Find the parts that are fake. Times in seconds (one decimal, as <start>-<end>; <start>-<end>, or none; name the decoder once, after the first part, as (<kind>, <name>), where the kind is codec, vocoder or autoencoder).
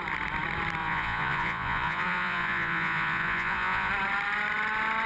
0.8-3.9 (vocoder, Vocos)